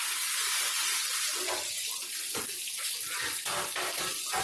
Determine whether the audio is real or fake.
real